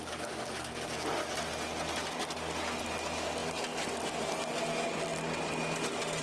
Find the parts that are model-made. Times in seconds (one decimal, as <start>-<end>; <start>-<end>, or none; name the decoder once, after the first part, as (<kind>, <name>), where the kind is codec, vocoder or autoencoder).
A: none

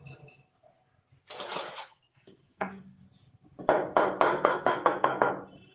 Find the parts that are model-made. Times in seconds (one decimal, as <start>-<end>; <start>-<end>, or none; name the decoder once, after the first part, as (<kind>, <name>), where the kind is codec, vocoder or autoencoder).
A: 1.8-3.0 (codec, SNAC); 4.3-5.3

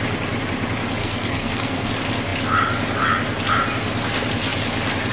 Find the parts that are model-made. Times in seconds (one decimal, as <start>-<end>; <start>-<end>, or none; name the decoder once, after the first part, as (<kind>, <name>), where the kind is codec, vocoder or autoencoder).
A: 1.0-1.9 (codec, SNAC)

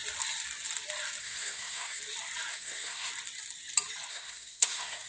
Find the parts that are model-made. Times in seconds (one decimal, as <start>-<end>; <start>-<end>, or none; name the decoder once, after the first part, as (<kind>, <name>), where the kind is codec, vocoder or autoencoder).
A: 1.2-2.0 (codec, SNAC); 2.5-3.1; 4.1-5.1

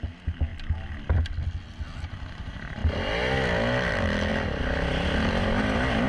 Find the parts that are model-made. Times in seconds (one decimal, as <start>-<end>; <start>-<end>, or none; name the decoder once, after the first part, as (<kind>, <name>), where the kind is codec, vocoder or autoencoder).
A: none